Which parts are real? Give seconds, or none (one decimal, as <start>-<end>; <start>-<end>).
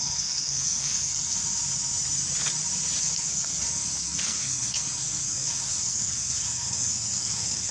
1.4-3.0